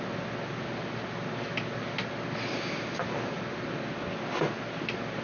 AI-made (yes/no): no